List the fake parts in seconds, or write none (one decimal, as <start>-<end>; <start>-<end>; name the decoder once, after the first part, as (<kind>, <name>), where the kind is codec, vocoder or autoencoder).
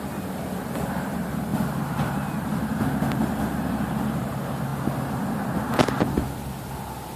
0.0-4.7 (vocoder, BigVGAN v2); 6.0-7.2